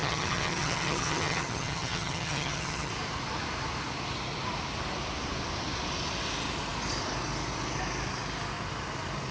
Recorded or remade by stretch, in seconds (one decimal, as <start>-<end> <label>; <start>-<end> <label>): 0.0-2.9 remade; 2.9-9.3 recorded